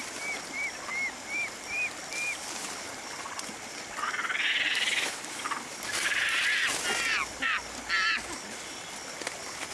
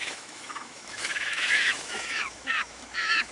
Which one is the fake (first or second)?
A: second